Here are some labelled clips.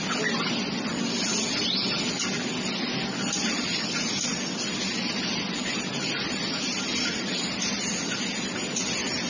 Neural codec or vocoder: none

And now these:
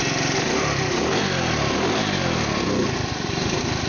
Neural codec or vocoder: none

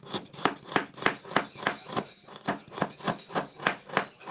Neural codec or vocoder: none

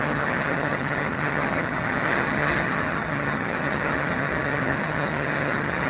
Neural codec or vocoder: vocoder, HiFi-GAN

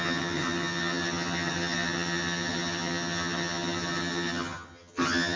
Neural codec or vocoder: vocoder, HiFi-GAN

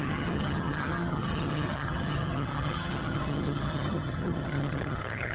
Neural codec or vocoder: vocoder, HiFi-GAN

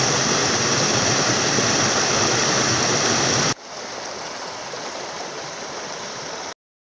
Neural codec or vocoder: none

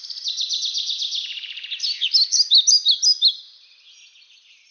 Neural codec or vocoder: none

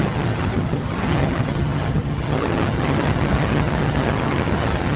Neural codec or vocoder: vocoder, HiFi-GAN